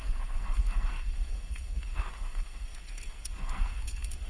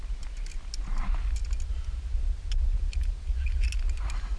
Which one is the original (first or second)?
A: second